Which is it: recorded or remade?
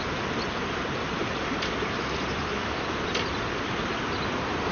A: recorded